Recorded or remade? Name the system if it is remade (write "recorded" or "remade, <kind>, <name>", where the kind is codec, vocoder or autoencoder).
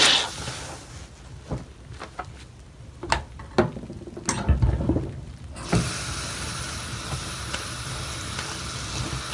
recorded